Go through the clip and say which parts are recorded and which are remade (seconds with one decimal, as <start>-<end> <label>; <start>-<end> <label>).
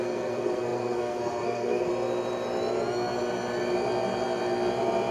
0.0-1.9 remade; 1.9-5.1 recorded